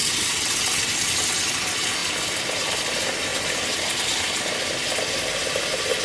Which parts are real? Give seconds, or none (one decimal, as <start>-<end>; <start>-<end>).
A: 0.9-6.0